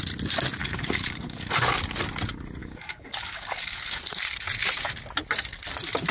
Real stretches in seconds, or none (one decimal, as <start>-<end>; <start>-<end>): 0.0-0.6; 1.5-2.6; 4.0-6.1